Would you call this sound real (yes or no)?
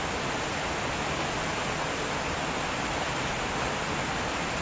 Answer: yes